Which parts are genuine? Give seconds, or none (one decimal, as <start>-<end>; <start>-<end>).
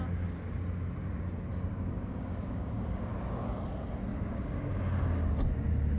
0.0-1.5; 3.1-4.1; 4.8-6.0